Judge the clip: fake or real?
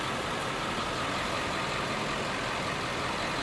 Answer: real